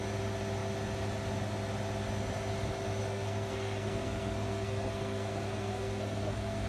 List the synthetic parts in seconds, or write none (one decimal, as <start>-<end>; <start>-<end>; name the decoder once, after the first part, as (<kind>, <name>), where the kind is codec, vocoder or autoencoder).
3.0-6.7 (codec, SNAC)